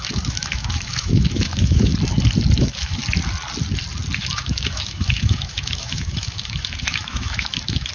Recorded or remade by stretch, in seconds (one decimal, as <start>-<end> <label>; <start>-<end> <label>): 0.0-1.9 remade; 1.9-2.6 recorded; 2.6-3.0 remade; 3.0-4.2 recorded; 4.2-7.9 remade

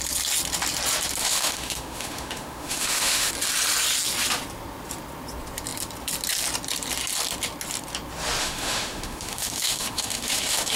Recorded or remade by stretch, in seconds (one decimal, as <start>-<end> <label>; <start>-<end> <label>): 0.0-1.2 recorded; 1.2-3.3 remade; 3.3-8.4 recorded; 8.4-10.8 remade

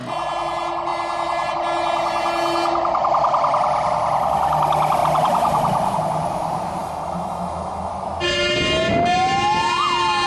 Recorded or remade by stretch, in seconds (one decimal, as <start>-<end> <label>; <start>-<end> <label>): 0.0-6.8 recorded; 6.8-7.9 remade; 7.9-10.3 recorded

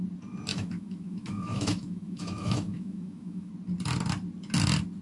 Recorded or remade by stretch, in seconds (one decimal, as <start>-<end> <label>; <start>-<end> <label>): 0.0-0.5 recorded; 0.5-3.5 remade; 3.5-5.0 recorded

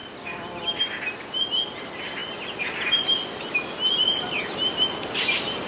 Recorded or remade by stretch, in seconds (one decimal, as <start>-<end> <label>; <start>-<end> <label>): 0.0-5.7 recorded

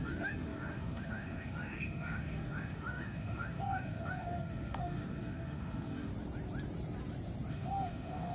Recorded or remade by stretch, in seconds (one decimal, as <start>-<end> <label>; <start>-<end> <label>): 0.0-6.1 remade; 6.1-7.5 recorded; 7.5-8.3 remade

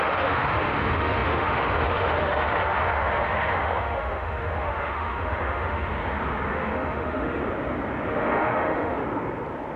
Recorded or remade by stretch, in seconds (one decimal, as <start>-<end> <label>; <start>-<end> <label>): 0.0-5.9 remade; 5.9-6.5 recorded; 6.5-7.4 remade; 7.4-8.1 recorded; 8.1-9.0 remade; 9.0-9.8 recorded

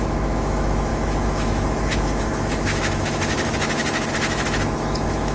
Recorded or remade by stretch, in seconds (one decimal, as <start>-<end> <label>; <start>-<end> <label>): 0.0-5.3 remade